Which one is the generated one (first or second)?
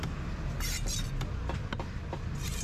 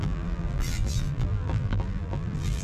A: second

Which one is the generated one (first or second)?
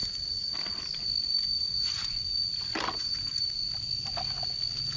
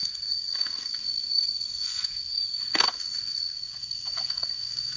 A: second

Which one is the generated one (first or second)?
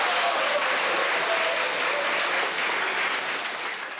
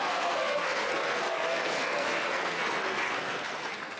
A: second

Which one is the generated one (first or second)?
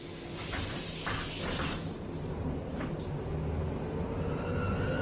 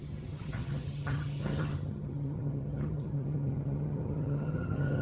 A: second